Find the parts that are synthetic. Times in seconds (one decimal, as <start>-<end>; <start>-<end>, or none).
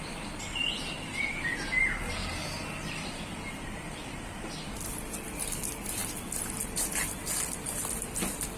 0.5-1.3